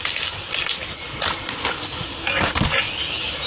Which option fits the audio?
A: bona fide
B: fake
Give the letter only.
A